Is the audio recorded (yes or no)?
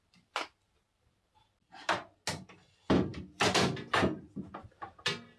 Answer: yes